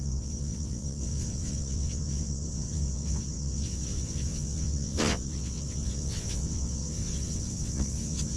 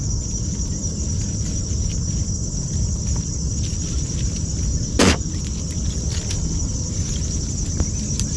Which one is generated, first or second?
first